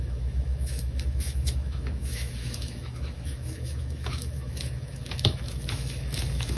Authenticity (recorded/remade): remade